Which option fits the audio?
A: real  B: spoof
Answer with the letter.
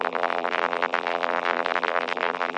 B